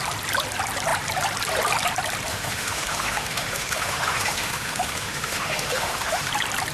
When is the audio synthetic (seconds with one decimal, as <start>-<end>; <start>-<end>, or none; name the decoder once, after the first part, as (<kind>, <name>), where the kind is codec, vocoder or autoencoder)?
2.3-6.3 (autoencoder, DAC-VAE)